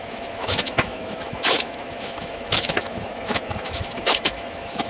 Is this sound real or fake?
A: fake